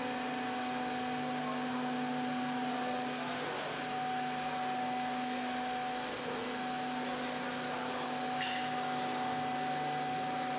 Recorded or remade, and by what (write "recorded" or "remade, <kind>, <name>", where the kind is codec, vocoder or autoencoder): recorded